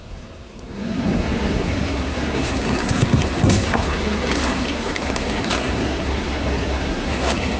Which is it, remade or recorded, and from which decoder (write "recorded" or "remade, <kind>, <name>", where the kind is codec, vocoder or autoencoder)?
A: remade, codec, SNAC